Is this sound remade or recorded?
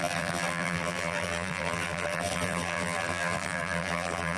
remade